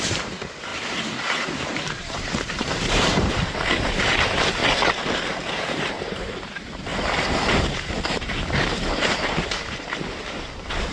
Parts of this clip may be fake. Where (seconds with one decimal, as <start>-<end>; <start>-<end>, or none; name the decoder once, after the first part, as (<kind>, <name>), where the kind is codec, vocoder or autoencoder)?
0.0-4.6 (vocoder, BigVGAN v2); 5.5-10.9